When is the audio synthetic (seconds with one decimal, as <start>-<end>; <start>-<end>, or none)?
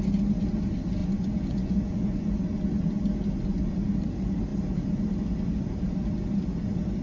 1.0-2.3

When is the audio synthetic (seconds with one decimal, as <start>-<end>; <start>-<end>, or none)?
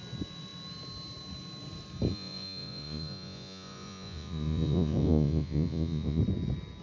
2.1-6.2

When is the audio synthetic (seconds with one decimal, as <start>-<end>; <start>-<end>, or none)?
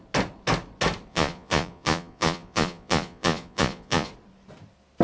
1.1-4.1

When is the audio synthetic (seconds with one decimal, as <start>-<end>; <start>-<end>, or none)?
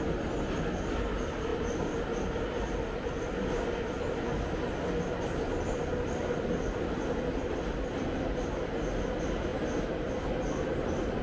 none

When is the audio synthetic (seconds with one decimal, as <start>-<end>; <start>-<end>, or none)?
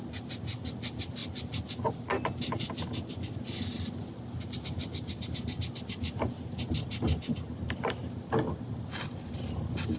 none